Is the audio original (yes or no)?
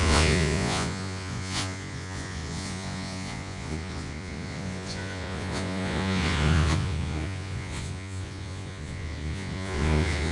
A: no